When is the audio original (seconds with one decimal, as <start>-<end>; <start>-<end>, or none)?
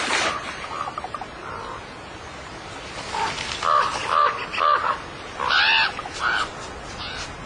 0.0-7.5